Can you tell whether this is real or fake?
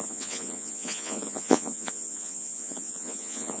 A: fake